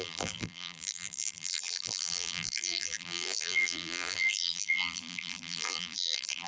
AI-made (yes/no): yes